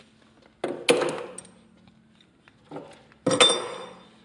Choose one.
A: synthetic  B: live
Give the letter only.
B